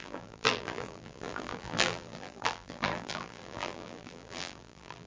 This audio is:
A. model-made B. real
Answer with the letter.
A